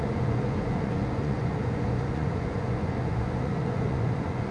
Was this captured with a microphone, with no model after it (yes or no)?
no